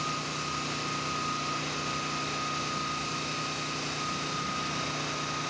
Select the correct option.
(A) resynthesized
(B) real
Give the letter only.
B